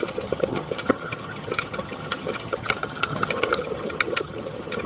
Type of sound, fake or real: fake